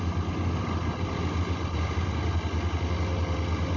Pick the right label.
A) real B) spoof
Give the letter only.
A